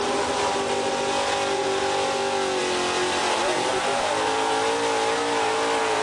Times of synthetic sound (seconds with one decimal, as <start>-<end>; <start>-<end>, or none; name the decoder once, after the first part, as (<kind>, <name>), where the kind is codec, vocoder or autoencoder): 3.2-4.1 (vocoder, BigVGAN v2)